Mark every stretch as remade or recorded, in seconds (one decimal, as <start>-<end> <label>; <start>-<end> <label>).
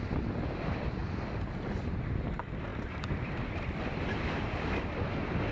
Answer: 0.0-1.0 recorded; 1.0-2.0 remade; 2.0-2.7 recorded; 2.7-4.5 remade; 4.5-5.5 recorded